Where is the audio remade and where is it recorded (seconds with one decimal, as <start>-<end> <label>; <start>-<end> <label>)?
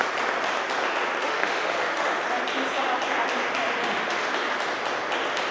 0.0-1.2 recorded; 1.2-2.2 remade; 2.2-3.8 recorded; 3.8-4.3 remade; 4.3-5.5 recorded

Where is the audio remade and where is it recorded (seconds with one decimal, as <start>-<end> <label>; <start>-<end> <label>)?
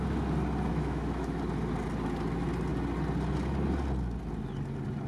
0.0-0.7 recorded; 0.7-1.4 remade; 1.4-5.1 recorded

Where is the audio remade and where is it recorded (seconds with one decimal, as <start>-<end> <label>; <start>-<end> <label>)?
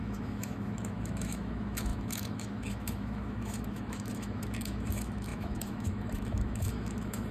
0.0-7.3 remade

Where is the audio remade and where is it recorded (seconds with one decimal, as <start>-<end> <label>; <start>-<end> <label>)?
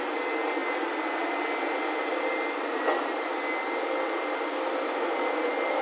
0.0-5.8 recorded